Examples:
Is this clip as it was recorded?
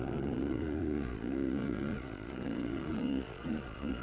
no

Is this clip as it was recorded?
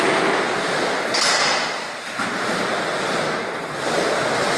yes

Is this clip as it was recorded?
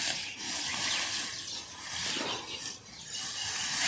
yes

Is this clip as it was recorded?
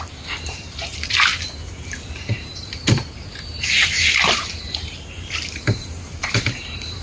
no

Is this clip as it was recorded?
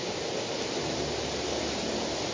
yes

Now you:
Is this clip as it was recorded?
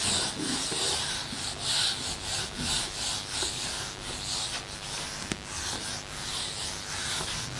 yes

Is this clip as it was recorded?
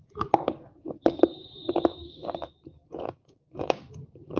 no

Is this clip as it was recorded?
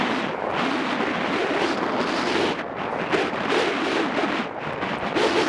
yes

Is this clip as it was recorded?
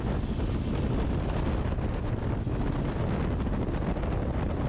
yes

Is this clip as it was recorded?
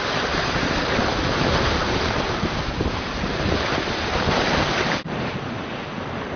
no